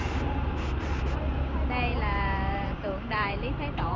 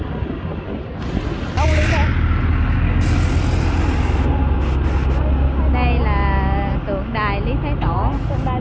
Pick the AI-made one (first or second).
first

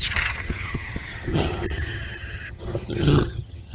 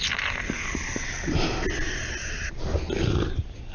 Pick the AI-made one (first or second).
first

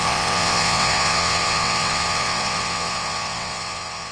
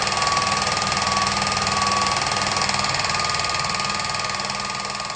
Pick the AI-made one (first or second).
first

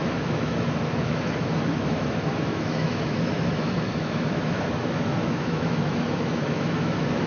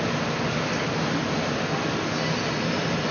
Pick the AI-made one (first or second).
first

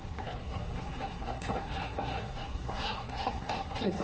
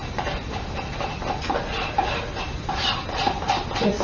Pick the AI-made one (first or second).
first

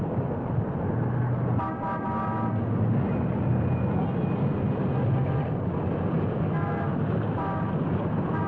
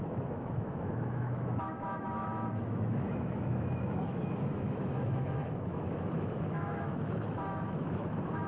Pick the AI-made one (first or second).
second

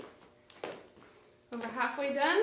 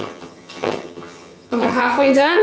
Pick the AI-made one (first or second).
second